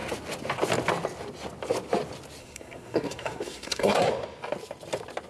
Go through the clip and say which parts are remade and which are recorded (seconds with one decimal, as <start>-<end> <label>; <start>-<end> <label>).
0.0-2.4 recorded; 2.4-4.1 remade; 4.1-5.3 recorded